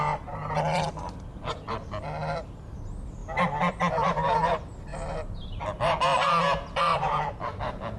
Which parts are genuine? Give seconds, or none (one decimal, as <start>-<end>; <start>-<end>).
0.0-4.9; 5.6-6.9; 7.6-8.0